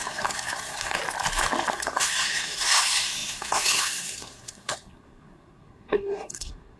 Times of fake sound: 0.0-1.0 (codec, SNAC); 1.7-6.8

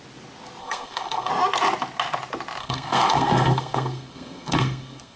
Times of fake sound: 0.6-1.3 (codec, SNAC); 2.6-5.2

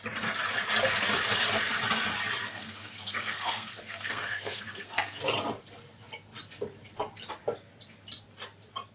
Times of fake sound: 2.5-5.2 (codec, SNAC)

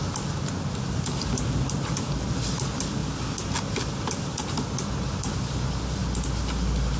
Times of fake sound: none

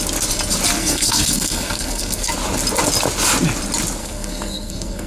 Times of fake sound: 0.8-2.3 (codec, SNAC); 4.0-5.1

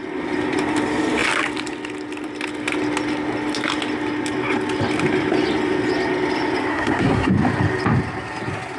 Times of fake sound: 6.7-7.3 (codec, SNAC)

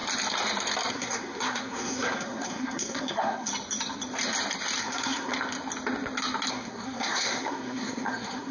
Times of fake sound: 0.9-3.5 (codec, SNAC); 4.8-5.3; 6.5-8.5

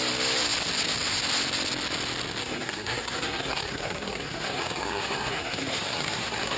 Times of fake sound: 2.4-6.6 (codec, SNAC)